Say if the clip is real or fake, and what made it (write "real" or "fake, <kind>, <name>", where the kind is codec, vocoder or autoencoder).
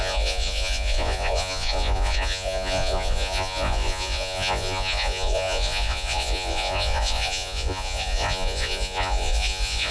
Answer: fake, vocoder, Vocos